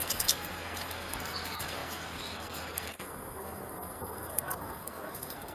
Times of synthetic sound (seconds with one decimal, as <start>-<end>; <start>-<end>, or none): 0.0-5.5